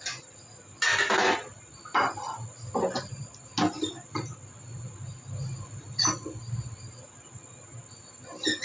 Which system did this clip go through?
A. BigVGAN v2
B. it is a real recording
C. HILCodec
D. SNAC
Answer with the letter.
B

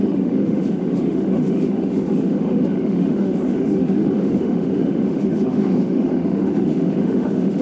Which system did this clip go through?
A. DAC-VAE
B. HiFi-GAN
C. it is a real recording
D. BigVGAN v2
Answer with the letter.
A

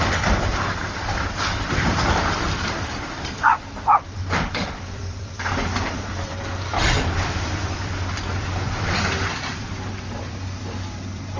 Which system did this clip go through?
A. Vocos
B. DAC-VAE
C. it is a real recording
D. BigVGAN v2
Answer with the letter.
D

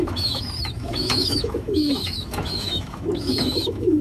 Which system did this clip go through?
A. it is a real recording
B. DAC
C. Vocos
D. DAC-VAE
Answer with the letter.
D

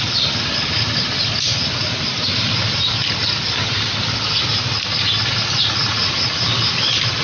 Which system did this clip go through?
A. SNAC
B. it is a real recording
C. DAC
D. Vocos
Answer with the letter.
B